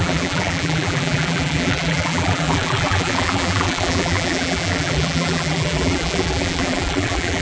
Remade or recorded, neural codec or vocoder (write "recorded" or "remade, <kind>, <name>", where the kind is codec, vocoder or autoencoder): remade, vocoder, BigVGAN v2